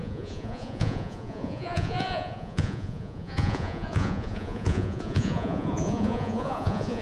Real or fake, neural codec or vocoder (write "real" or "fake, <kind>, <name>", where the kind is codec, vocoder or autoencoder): fake, vocoder, Vocos